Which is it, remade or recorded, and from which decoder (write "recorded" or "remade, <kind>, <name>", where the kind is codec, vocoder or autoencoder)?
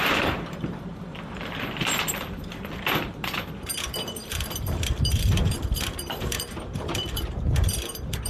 remade, vocoder, BigVGAN v2